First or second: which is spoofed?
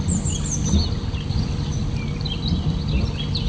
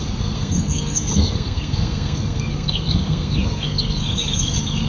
second